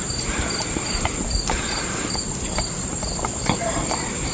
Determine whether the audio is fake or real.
real